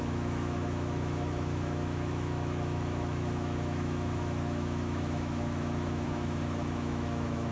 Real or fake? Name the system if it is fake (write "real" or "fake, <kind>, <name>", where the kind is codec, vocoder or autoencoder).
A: fake, autoencoder, DAC-VAE